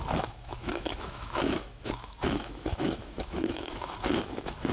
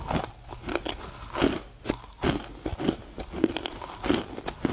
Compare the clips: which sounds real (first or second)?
second